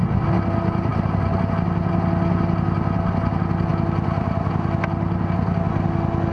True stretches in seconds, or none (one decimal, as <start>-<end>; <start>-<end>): 0.0-6.3